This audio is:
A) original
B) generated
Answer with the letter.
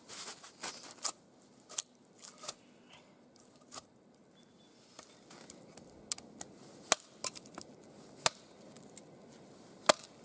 A